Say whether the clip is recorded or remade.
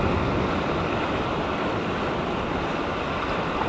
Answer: recorded